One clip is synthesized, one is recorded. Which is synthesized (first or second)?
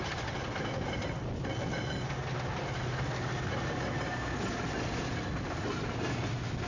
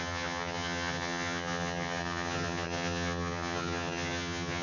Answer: second